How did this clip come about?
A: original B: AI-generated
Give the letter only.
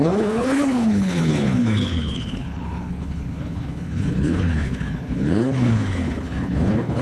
B